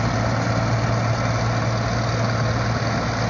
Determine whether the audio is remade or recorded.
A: recorded